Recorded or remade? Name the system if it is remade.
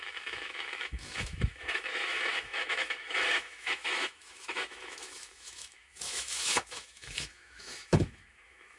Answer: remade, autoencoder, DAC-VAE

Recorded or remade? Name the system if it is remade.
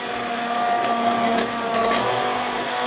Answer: recorded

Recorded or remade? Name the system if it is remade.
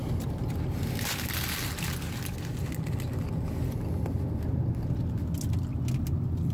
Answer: recorded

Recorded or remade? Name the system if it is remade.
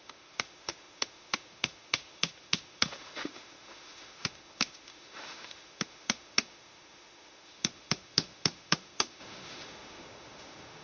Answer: remade, autoencoder, DAC-VAE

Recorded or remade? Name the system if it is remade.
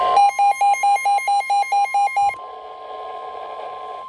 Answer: recorded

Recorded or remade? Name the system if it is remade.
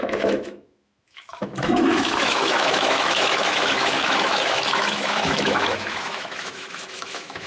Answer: remade, autoencoder, DAC-VAE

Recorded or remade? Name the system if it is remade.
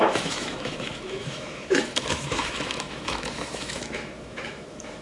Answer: remade, autoencoder, DAC-VAE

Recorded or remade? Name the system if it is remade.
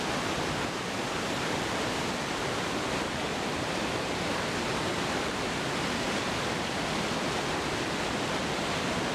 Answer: recorded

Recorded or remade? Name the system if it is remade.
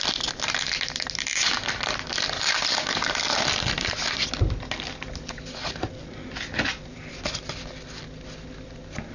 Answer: recorded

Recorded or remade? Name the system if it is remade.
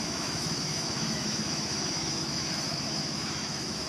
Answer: remade, autoencoder, DAC-VAE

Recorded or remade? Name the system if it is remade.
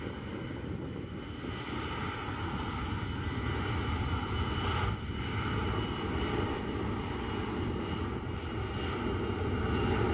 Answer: recorded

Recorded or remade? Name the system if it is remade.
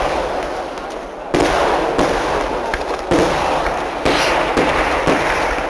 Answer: recorded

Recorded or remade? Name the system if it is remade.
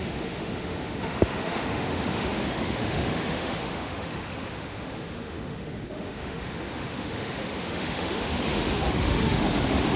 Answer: remade, autoencoder, DAC-VAE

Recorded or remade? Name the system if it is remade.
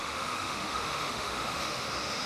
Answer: remade, autoencoder, DAC-VAE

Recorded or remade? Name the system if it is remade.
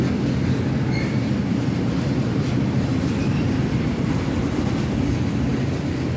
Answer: recorded